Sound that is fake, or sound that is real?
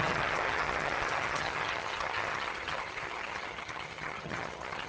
fake